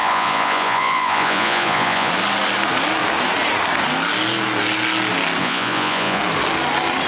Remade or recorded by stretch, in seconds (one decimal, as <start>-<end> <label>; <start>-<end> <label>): 0.0-2.1 remade; 2.1-5.4 recorded; 5.4-6.2 remade; 6.2-7.1 recorded